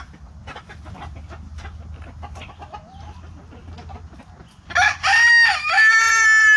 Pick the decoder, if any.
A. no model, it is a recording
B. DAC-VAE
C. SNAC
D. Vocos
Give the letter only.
A